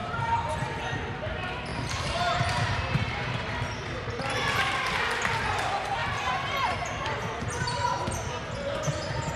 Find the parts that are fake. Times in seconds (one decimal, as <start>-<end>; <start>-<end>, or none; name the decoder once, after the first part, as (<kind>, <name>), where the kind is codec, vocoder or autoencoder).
0.0-0.8 (vocoder, BigVGAN v2); 1.7-5.0; 6.0-8.0